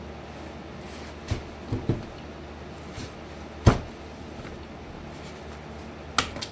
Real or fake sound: real